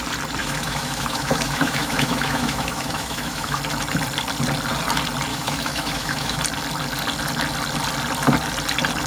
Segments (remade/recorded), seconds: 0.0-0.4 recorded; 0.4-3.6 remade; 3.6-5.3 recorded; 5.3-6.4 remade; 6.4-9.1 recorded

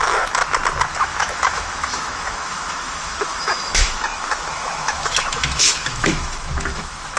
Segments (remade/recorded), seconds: 0.0-0.4 remade; 0.4-1.0 recorded; 1.0-7.2 remade

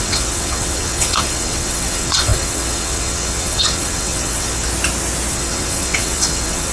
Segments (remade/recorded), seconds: 0.0-4.7 remade; 4.7-5.3 recorded; 5.3-6.7 remade

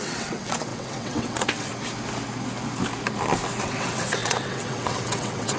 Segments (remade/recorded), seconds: 0.0-1.7 remade; 1.7-3.6 recorded; 3.6-5.6 remade

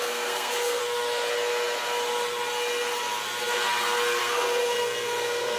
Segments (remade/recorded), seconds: 0.0-0.8 remade; 0.8-4.2 recorded; 4.2-5.6 remade

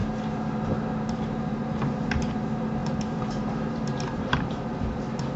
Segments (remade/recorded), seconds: 0.0-1.1 recorded; 1.1-5.4 remade

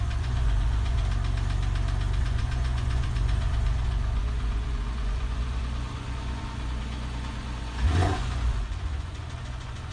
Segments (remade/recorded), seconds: 0.0-1.0 remade; 1.0-2.2 recorded; 2.2-9.9 remade

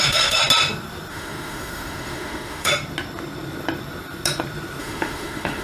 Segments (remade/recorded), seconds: 0.0-0.4 remade; 0.4-1.1 recorded; 1.1-2.7 remade; 2.7-4.8 recorded; 4.8-5.6 remade